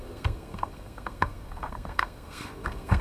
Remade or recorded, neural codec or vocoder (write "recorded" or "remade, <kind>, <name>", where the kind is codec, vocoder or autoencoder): remade, codec, SNAC